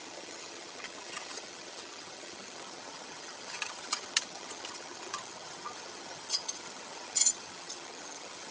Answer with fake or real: fake